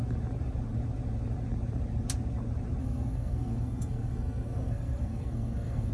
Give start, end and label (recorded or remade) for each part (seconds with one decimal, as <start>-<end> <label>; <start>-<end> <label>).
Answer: 0.0-2.8 recorded; 2.8-5.9 remade